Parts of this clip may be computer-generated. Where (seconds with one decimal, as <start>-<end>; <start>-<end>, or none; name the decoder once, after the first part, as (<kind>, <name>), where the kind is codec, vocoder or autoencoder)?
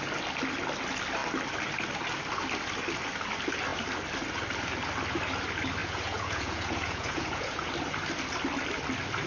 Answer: 5.8-7.7 (vocoder, Vocos)